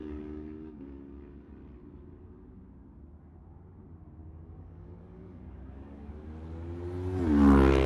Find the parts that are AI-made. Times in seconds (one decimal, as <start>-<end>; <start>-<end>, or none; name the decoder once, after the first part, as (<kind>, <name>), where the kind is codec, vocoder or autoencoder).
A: 0.0-1.5 (codec, DAC); 4.2-6.1